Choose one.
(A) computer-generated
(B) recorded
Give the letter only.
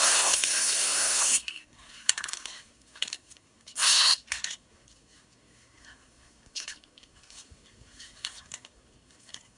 A